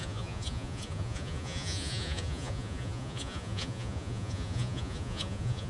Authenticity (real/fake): fake